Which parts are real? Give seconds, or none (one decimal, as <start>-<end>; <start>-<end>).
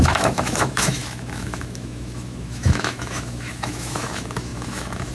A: none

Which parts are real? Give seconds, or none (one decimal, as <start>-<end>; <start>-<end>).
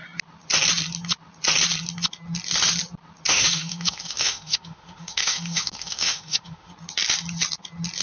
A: 0.0-3.3; 6.7-8.0